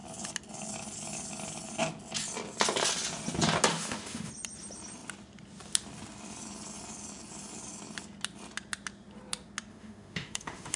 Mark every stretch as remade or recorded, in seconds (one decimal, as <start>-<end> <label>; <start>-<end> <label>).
0.0-3.7 recorded; 3.7-4.3 remade; 4.3-9.7 recorded; 9.7-10.8 remade